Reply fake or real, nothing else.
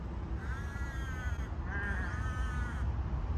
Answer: real